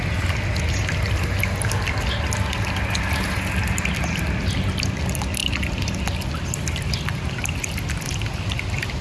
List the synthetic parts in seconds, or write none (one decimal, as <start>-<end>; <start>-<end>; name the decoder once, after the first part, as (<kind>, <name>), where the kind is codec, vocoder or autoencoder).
none